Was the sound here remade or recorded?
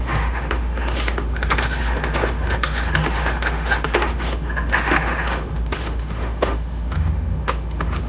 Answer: remade